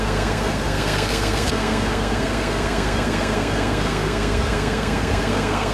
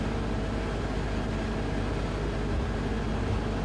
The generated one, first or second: first